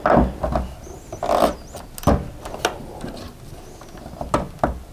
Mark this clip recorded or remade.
recorded